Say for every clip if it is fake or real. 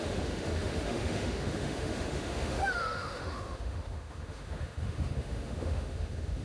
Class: fake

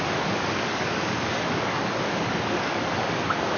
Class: fake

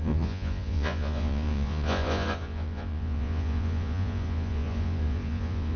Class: fake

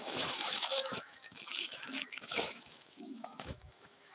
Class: fake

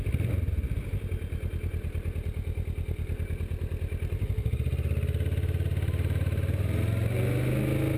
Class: real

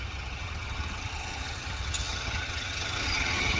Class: fake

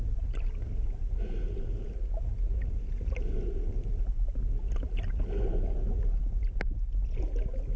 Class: real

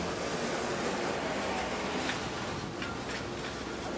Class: real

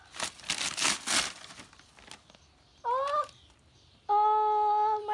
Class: real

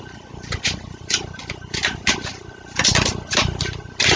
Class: real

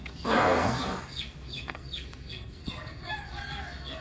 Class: fake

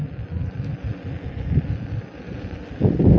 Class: real